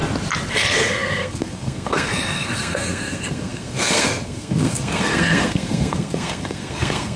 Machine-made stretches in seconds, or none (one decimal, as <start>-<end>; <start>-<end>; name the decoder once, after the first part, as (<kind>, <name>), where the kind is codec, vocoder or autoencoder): 0.5-7.2 (codec, SNAC)